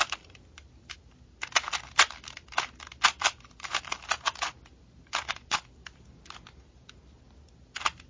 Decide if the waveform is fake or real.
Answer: real